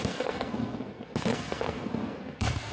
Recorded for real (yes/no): no